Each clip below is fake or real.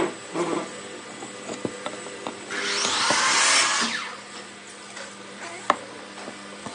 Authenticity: real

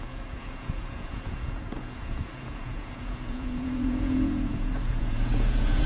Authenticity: fake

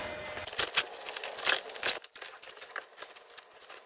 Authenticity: real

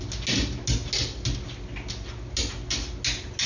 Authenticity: real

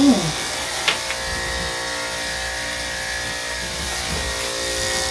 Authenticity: real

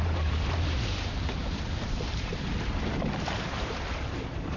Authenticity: fake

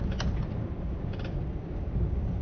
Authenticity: real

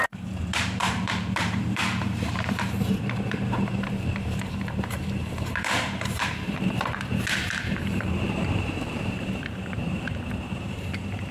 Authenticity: fake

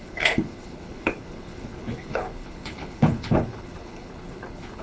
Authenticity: fake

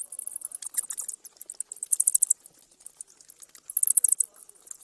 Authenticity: real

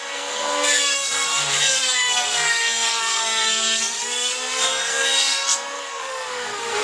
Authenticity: fake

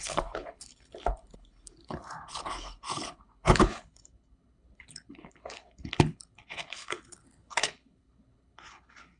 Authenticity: fake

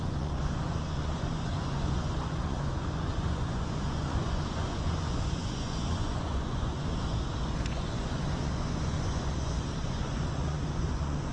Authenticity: fake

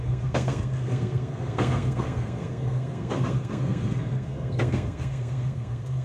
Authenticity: fake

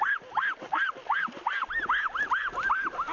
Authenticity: real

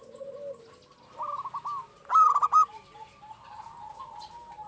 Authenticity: real